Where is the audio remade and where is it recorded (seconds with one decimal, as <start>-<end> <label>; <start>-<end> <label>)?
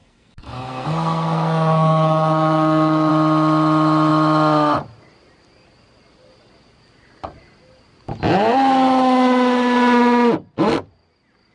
0.0-3.1 remade; 3.1-11.5 recorded